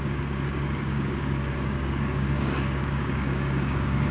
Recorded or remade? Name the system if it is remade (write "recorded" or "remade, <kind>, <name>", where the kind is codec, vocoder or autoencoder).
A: remade, codec, DAC